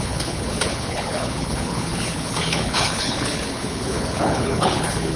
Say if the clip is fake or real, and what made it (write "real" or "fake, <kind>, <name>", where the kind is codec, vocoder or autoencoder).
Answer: fake, codec, HILCodec